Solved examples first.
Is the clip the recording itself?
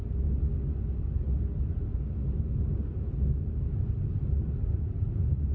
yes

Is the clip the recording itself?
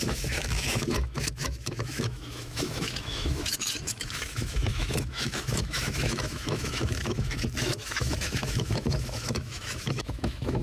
no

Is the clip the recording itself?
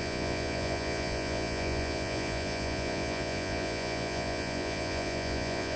no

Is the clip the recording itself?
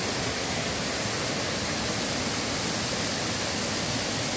yes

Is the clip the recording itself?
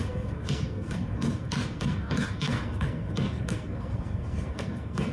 no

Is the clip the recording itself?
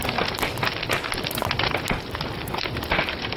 yes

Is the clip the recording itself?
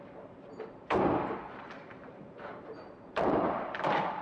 no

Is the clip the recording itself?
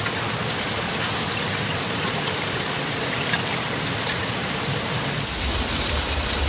no